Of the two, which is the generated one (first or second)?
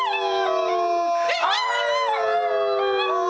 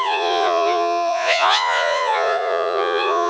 second